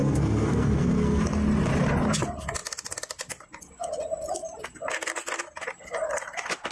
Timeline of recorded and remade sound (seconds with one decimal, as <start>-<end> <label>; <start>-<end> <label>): 0.0-1.2 remade; 1.2-6.7 recorded